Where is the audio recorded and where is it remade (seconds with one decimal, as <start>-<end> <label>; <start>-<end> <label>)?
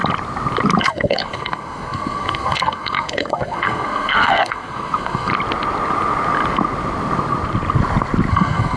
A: 0.0-0.8 recorded; 0.8-5.3 remade; 5.3-8.3 recorded; 8.3-8.8 remade